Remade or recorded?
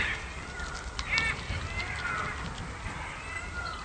recorded